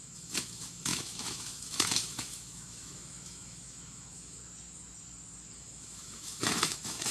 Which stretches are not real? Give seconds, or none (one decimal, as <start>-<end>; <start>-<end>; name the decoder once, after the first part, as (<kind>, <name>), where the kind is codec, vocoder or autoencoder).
0.0-4.4 (autoencoder, DAC-VAE); 5.6-7.1